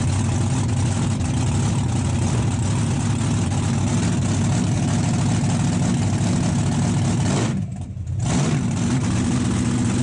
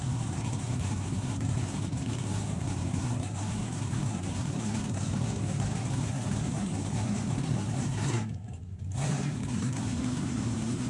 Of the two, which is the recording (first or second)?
first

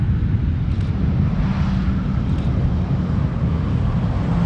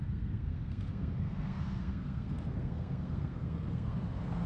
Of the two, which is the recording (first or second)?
first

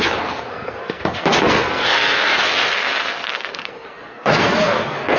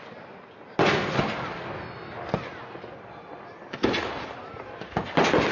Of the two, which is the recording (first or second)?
second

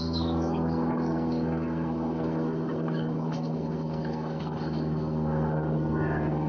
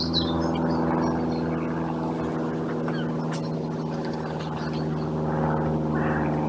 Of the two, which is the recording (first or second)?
second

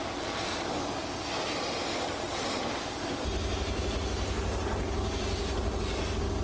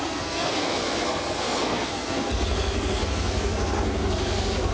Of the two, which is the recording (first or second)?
first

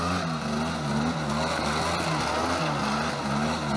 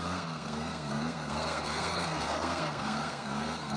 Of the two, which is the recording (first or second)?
first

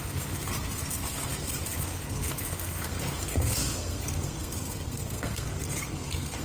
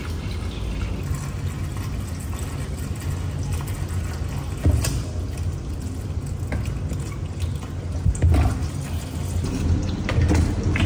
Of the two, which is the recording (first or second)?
second